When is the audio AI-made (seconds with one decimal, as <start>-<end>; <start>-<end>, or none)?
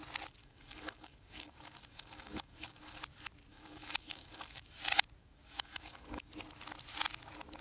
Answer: 0.4-3.0; 3.5-4.8; 5.2-6.3